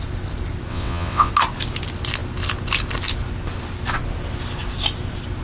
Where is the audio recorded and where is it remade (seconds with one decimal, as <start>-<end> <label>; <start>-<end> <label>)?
0.0-0.7 recorded; 0.7-1.3 remade; 1.3-5.4 recorded